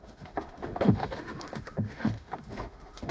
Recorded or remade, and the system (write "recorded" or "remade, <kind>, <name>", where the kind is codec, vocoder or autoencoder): remade, autoencoder, DAC-VAE